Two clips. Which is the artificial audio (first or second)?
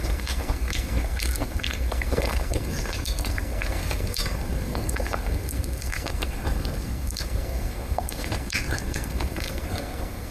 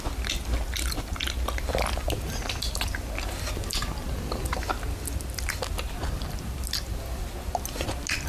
first